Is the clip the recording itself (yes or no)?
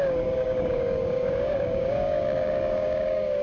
no